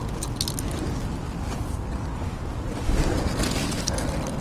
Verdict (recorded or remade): recorded